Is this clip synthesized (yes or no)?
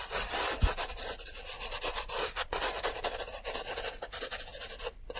no